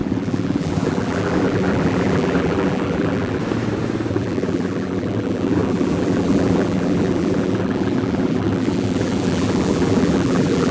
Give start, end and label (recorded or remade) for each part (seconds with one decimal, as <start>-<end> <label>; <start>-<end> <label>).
0.0-3.4 remade; 3.4-4.1 recorded; 4.1-10.7 remade